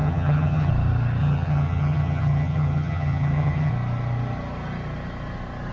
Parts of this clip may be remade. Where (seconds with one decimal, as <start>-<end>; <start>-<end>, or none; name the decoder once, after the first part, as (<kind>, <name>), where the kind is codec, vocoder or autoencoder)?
0.0-0.7 (vocoder, HiFi-GAN); 1.2-3.7